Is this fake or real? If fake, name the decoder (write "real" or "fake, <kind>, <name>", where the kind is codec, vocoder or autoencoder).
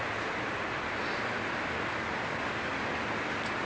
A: real